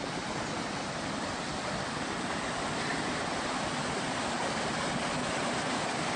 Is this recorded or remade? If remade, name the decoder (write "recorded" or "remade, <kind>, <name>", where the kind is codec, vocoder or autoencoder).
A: recorded